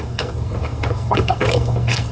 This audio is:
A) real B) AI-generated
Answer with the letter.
B